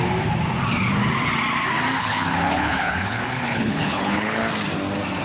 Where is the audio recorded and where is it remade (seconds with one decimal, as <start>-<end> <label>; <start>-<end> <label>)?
0.0-2.0 recorded; 2.0-4.4 remade; 4.4-5.2 recorded